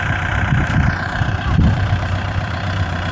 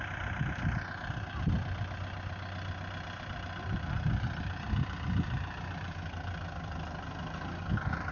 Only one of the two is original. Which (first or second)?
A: second